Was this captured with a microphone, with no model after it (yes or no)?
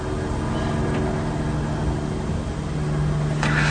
yes